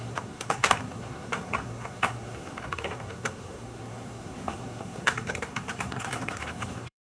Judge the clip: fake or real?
fake